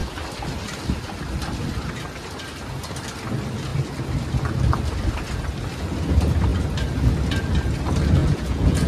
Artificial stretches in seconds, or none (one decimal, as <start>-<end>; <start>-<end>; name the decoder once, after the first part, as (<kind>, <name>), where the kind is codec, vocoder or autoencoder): 8.2-8.9 (vocoder, Vocos)